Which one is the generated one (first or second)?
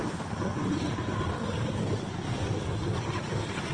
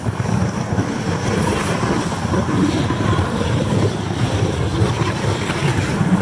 second